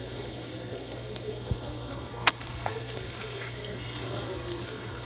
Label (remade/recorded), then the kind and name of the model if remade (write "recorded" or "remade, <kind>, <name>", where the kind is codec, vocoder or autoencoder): remade, codec, SNAC